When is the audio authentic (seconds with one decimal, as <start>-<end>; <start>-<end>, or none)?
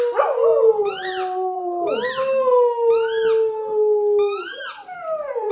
0.0-0.7; 1.9-5.5